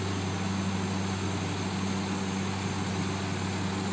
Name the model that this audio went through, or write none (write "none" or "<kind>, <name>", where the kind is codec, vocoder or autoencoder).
none